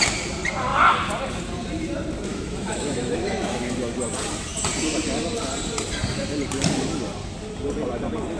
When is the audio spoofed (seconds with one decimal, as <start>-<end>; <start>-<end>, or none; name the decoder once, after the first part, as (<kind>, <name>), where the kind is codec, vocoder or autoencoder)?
2.3-3.7 (autoencoder, DAC-VAE)